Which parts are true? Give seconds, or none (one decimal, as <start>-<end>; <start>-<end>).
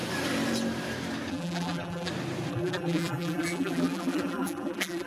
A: 0.0-1.3; 2.1-2.5